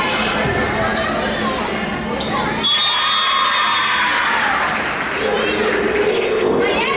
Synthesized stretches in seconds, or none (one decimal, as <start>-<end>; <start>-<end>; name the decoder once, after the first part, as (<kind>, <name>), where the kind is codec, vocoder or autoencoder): 6.1-6.6 (codec, ZipCodec)